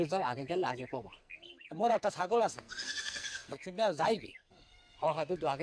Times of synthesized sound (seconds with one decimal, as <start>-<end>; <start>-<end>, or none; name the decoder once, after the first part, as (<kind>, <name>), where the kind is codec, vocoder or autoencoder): 0.0-5.6 (codec, SNAC)